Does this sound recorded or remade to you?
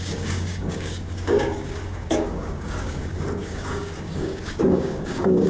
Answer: remade